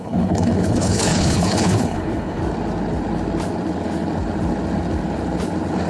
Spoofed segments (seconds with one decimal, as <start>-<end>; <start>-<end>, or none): 0.0-2.4